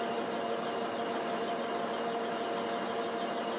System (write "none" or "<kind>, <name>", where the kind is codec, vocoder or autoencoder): none